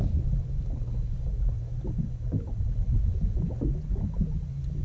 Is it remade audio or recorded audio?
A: recorded